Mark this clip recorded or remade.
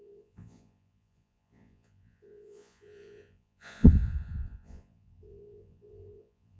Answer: remade